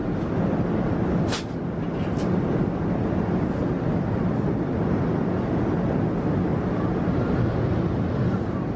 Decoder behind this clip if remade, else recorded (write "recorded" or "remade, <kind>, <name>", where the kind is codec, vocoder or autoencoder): recorded